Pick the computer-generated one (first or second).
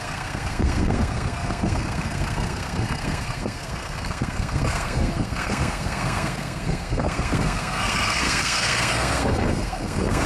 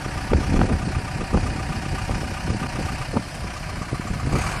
first